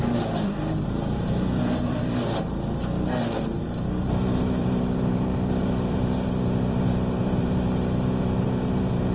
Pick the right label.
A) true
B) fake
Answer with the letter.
B